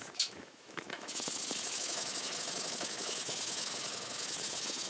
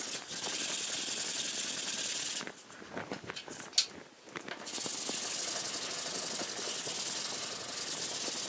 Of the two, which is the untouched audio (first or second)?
second